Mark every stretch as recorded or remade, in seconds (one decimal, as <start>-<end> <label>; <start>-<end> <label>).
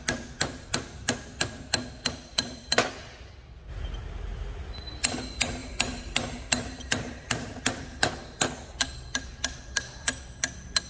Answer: 0.0-2.3 recorded; 2.3-2.9 remade; 2.9-5.6 recorded; 5.6-7.6 remade; 7.6-10.9 recorded